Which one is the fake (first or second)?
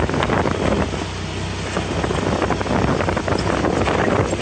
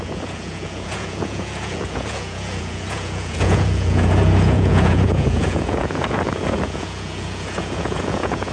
second